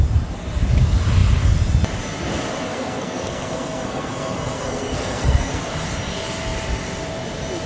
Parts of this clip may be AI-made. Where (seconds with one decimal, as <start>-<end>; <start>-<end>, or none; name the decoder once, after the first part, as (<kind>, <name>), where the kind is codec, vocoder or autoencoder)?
2.7-5.7 (codec, SNAC)